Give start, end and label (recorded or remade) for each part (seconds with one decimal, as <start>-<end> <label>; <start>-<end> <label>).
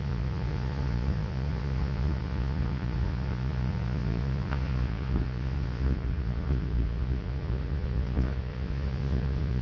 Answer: 0.0-9.6 remade